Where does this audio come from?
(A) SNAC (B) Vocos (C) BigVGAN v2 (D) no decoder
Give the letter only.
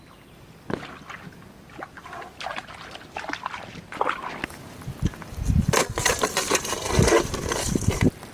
D